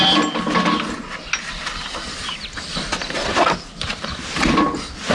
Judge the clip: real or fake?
real